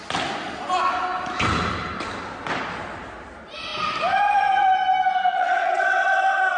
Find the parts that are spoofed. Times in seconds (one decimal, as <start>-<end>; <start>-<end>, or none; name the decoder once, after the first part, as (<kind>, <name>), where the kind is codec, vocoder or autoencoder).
5.3-6.6 (vocoder, WaveNeXt)